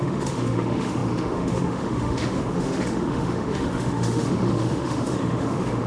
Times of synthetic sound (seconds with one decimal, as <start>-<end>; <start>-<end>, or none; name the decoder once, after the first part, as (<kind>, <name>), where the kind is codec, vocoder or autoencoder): 0.0-5.9 (autoencoder, DAC-VAE)